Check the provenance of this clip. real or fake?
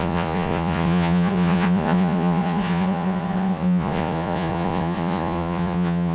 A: fake